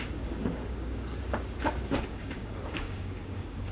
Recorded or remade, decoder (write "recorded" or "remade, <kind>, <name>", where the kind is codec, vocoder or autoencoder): remade, codec, DAC